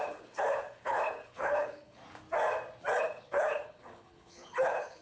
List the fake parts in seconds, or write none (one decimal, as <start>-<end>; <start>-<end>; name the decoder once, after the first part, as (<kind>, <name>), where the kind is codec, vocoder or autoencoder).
0.0-2.0 (codec, HILCodec); 3.0-5.0